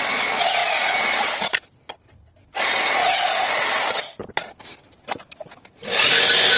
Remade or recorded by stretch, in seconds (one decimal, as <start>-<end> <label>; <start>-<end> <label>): 0.0-3.0 recorded; 3.0-3.5 remade; 3.5-6.6 recorded